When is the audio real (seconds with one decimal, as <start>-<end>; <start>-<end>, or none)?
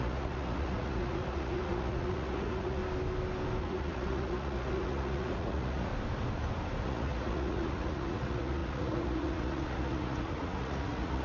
2.8-3.6; 5.9-6.8